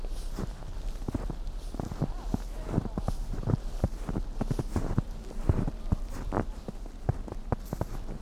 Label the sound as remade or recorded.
recorded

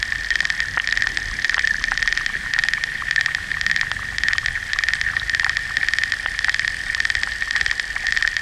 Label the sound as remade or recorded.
recorded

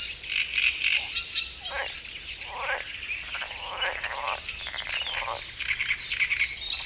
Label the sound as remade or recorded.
recorded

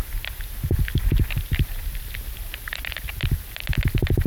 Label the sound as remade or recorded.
recorded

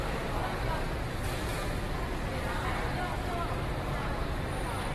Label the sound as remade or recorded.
remade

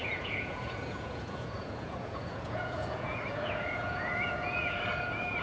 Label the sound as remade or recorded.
remade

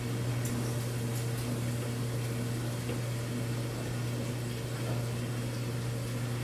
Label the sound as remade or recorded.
recorded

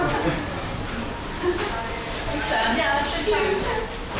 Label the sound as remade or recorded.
recorded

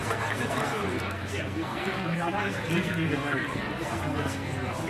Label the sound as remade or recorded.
remade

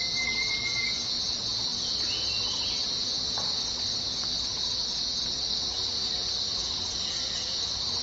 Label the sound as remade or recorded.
recorded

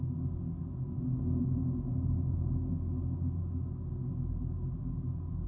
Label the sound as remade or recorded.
recorded